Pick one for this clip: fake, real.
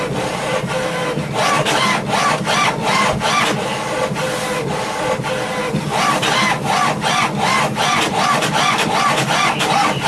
real